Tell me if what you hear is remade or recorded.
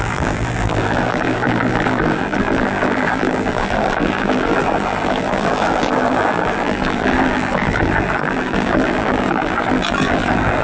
remade